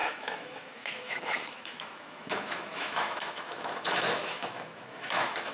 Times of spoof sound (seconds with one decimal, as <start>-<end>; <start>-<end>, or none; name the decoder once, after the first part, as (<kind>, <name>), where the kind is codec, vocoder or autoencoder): 0.0-5.5 (autoencoder, DAC-VAE)